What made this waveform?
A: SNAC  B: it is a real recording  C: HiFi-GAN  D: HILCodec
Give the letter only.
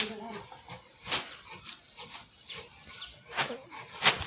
B